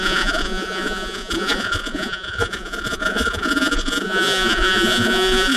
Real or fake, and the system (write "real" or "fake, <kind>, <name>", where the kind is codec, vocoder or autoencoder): fake, vocoder, Vocos